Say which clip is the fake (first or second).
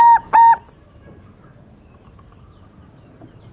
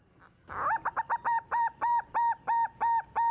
first